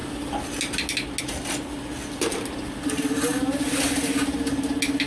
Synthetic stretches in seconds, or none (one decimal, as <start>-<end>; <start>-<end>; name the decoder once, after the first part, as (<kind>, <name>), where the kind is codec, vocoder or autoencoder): none